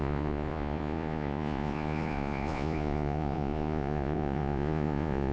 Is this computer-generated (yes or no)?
yes